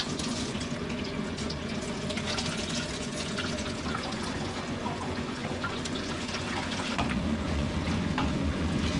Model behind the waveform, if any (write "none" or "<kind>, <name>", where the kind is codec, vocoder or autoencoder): vocoder, Vocos